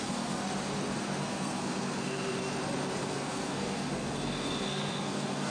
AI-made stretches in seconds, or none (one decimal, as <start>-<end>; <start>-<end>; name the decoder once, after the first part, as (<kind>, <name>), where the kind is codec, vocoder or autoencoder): 0.0-0.4 (codec, SNAC); 1.0-2.4; 3.0-5.5